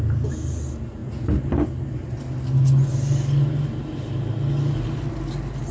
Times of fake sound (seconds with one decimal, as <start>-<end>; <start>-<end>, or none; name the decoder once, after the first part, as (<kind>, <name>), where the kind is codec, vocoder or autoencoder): none